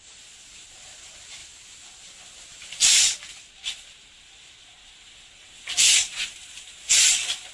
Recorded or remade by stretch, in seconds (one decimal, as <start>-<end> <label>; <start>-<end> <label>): 0.0-7.5 recorded